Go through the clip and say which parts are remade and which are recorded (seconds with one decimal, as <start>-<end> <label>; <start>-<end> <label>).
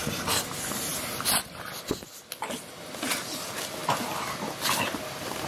0.0-5.5 recorded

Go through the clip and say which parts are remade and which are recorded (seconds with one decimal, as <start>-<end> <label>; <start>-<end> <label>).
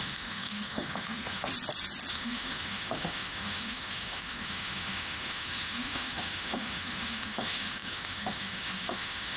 0.0-1.5 remade; 1.5-2.1 recorded; 2.1-9.4 remade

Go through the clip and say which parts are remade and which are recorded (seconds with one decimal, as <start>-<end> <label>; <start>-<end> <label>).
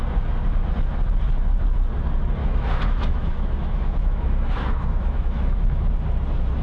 0.0-2.4 recorded; 2.4-5.9 remade; 5.9-6.6 recorded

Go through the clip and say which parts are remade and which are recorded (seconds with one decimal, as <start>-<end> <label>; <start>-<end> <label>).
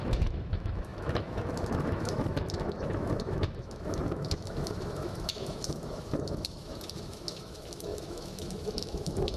0.0-9.4 remade